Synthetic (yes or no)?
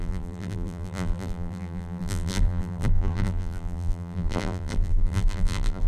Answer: yes